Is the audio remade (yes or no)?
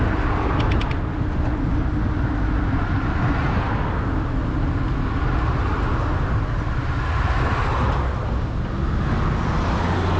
no